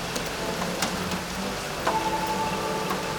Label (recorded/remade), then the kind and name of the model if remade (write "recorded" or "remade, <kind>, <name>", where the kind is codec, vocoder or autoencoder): recorded